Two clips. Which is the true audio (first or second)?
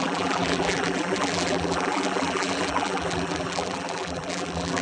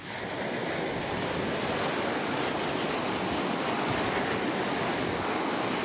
second